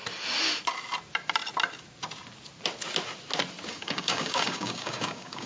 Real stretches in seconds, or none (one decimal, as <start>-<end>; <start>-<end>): 0.0-3.7